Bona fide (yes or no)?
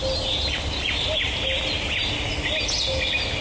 yes